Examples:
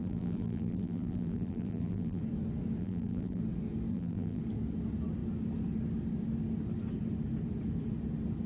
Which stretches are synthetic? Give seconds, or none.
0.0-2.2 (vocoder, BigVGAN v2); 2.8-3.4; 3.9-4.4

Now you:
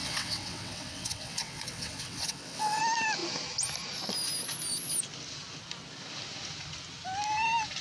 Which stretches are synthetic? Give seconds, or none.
0.0-2.8 (vocoder, WaveNeXt)